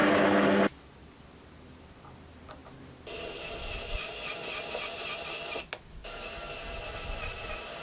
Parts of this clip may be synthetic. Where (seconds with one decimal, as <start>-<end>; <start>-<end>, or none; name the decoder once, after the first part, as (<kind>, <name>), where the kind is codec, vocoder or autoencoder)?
none

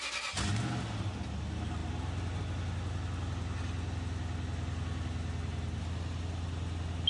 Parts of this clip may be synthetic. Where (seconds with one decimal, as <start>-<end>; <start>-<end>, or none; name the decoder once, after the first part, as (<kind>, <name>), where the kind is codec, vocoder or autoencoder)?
none

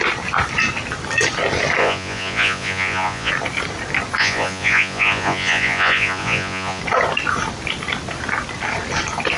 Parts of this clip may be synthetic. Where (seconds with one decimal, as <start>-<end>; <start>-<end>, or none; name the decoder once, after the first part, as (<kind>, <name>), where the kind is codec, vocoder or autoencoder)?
1.8-3.3 (vocoder, Vocos); 4.2-6.8

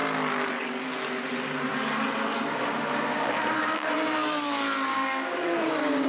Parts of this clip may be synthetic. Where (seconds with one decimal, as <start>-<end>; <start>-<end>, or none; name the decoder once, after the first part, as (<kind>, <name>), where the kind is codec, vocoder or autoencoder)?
4.9-6.1 (codec, DAC)